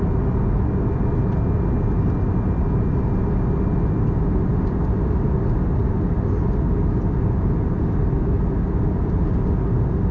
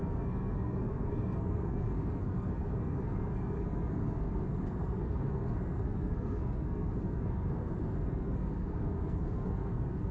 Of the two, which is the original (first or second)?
first